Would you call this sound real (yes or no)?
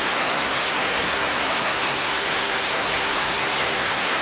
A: no